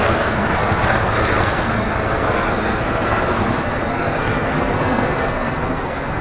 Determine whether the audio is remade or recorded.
remade